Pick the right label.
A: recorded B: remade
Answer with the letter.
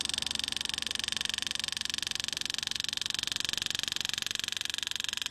A